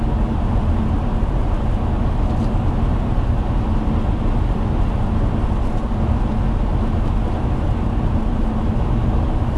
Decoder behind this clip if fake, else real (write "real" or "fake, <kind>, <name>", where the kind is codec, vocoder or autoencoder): real